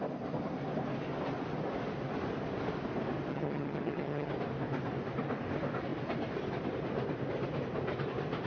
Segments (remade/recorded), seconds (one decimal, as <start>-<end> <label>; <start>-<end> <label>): 0.0-3.3 recorded; 3.3-4.3 remade; 4.3-8.5 recorded